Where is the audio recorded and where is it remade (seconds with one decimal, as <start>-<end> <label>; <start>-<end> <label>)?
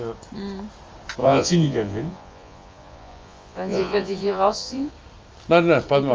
0.0-1.2 recorded; 1.2-4.9 remade; 4.9-6.1 recorded